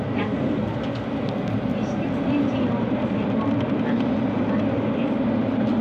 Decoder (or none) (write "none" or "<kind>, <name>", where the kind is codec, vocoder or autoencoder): none